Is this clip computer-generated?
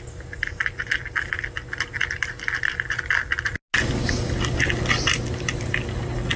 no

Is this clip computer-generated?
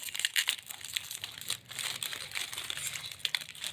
no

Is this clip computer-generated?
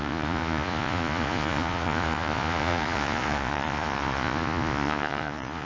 yes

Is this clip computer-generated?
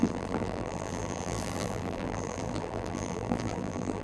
yes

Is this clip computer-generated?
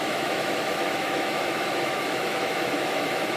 yes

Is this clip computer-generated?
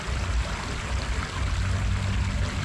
no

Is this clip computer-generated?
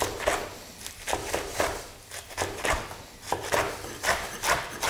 yes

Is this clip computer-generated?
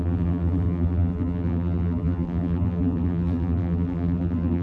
yes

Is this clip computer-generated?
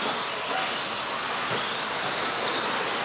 no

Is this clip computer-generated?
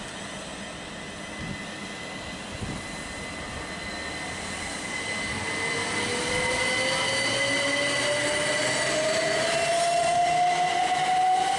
no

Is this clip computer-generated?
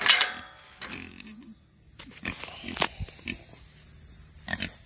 no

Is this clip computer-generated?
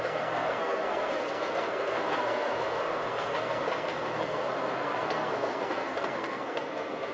yes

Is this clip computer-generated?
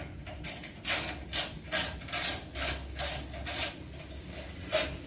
no